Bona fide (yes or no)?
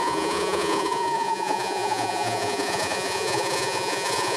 no